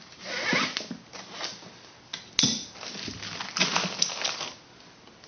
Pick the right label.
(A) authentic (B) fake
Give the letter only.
A